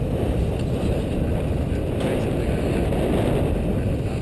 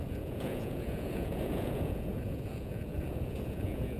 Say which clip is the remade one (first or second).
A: second